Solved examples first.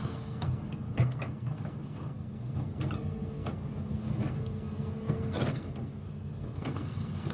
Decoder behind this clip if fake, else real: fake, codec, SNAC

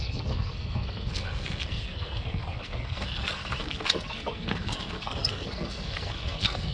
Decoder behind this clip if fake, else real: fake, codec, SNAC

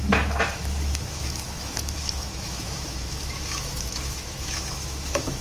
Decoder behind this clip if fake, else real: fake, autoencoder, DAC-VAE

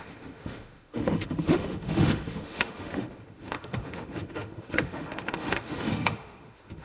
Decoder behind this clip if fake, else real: fake, autoencoder, DAC-VAE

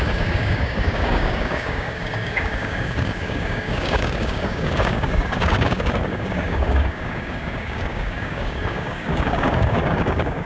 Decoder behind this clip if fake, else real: fake, codec, DAC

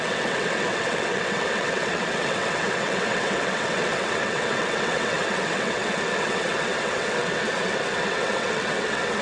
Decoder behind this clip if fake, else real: fake, vocoder, WaveNeXt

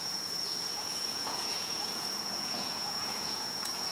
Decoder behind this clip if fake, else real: fake, vocoder, Vocos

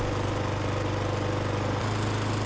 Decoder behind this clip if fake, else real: real